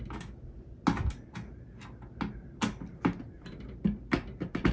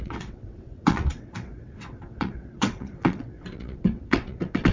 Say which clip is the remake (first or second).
second